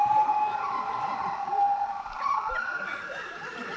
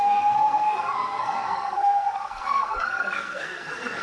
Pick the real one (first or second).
first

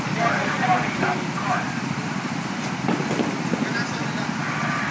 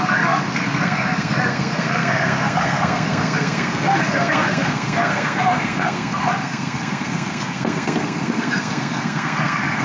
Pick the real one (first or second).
first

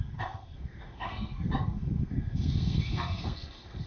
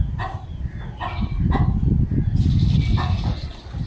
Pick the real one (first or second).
second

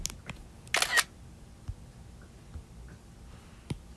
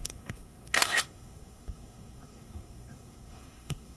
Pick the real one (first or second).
first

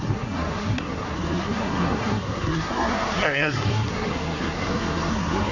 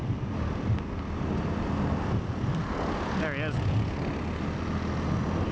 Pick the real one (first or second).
second